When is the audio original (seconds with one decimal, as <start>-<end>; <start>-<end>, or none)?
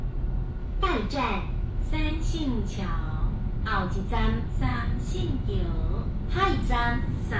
0.0-0.6; 2.1-4.7; 6.2-7.4